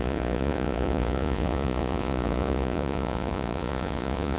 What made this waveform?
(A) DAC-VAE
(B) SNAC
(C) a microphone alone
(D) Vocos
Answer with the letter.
D